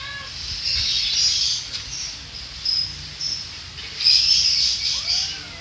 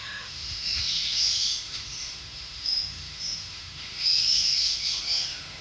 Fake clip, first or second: second